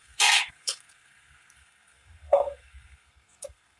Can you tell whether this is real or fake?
fake